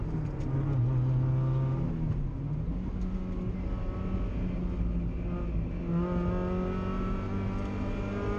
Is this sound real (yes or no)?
yes